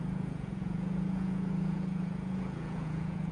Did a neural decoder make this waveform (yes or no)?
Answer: yes